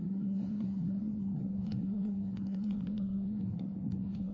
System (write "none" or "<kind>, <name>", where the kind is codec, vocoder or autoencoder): codec, SNAC